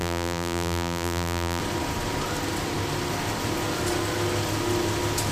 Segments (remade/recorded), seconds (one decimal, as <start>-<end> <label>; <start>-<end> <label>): 0.0-1.6 remade; 1.6-5.3 recorded